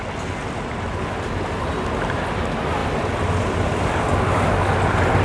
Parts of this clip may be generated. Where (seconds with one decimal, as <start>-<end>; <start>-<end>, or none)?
none

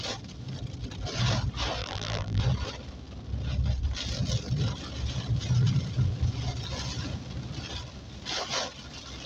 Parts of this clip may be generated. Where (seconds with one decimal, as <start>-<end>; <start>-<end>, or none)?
1.8-2.4